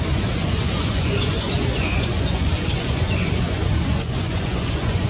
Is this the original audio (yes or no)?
no